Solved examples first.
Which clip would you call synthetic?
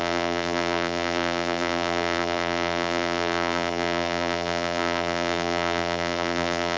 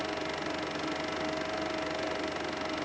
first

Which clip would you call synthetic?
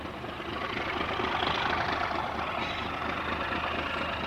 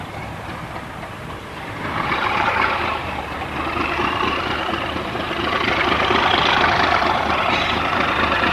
second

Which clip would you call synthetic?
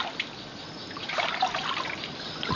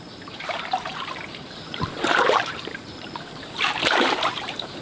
second